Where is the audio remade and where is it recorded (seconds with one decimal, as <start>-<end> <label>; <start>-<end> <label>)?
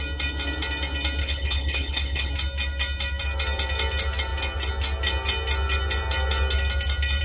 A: 0.0-1.2 recorded; 1.2-2.3 remade; 2.3-7.2 recorded